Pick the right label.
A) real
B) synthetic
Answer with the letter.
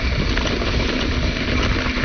A